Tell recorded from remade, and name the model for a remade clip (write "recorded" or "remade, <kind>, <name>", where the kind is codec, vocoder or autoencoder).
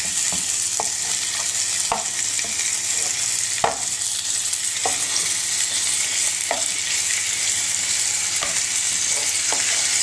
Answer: recorded